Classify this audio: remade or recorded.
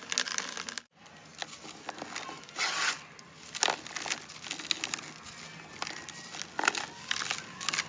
recorded